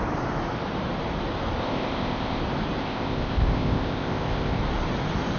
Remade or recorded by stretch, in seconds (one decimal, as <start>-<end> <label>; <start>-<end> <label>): 0.0-1.6 recorded; 1.6-2.4 remade; 2.4-2.8 recorded; 2.8-4.6 remade; 4.6-5.4 recorded